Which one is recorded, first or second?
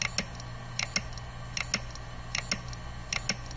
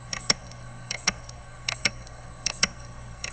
first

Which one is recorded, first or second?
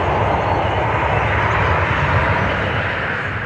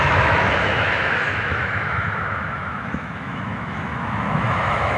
first